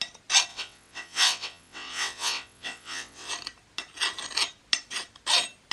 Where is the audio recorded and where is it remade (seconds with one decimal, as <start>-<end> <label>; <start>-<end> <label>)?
0.0-0.5 recorded; 0.5-3.3 remade; 3.3-5.7 recorded